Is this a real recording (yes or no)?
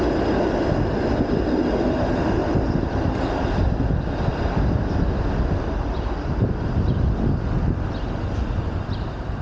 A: yes